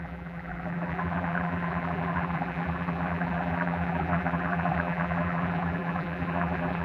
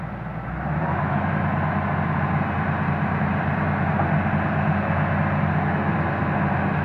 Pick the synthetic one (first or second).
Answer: first